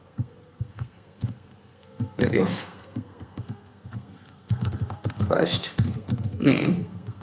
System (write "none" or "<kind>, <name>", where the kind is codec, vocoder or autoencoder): codec, SNAC